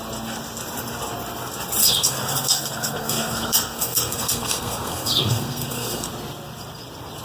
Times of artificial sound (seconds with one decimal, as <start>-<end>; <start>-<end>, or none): 1.8-6.1